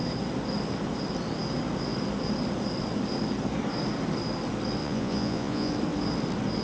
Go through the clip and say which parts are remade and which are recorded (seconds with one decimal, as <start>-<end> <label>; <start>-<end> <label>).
0.0-4.8 recorded; 4.8-5.7 remade; 5.7-6.6 recorded